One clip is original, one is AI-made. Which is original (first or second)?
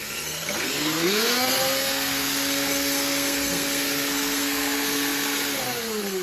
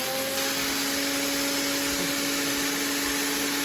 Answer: second